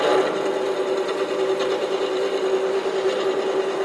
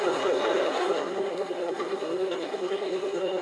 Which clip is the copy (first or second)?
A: second